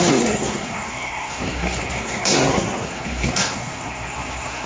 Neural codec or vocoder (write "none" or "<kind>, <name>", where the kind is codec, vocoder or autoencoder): codec, SNAC